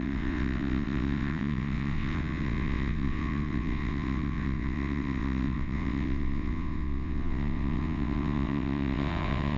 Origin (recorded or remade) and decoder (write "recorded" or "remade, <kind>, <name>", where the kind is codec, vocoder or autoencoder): remade, vocoder, WaveNeXt